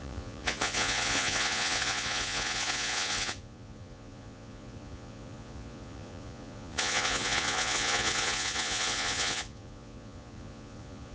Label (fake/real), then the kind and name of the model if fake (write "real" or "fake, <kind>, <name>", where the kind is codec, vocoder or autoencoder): fake, vocoder, Vocos